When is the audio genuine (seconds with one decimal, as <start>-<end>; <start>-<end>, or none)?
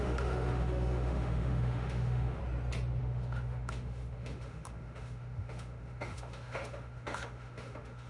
2.4-3.0